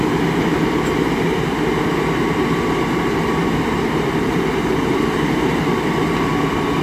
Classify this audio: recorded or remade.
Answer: remade